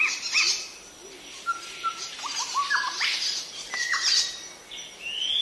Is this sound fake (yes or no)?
no